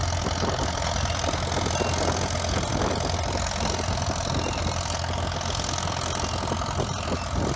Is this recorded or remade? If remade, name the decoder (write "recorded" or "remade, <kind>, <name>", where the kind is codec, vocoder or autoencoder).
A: recorded